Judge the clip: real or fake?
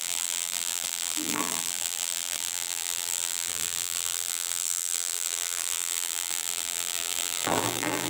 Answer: fake